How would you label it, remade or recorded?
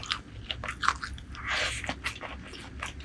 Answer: recorded